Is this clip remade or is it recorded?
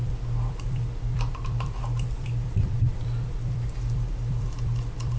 remade